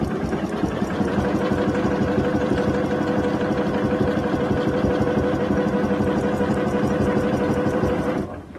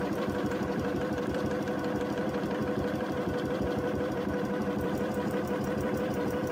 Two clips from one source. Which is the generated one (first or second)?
second